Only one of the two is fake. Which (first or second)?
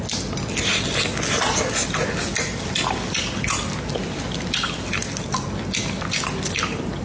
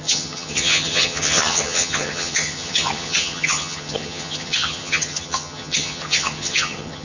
second